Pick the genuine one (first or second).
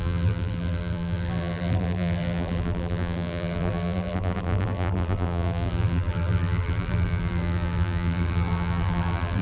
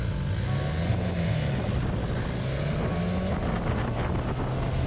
second